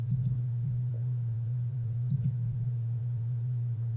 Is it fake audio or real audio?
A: fake